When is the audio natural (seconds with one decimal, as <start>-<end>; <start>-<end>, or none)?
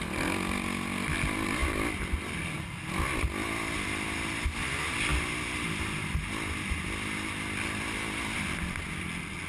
0.0-9.5